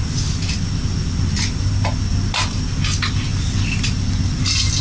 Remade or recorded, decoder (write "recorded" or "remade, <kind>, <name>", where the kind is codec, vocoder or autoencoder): recorded